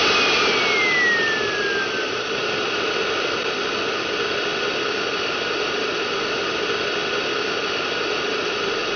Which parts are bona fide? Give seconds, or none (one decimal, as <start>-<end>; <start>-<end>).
0.0-9.0

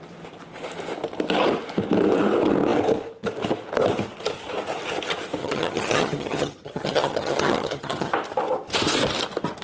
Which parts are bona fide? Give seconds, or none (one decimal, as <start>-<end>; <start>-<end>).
0.0-5.4; 8.1-9.6

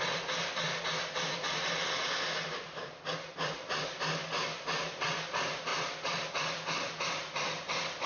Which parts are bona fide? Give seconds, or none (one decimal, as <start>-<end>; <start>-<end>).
0.0-8.1

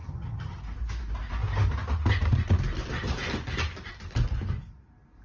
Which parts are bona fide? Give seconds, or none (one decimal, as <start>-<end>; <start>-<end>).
0.6-5.2

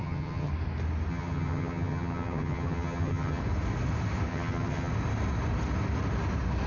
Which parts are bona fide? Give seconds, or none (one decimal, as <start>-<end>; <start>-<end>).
0.5-1.1; 3.4-4.3; 4.9-6.7

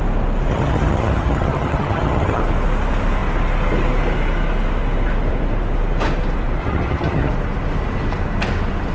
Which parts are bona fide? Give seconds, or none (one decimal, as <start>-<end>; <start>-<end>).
0.0-0.5; 2.4-6.6; 7.3-8.9